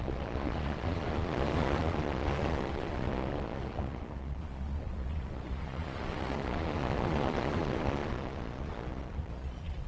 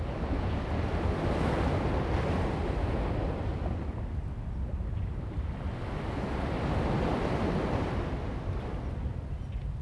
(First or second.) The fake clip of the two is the first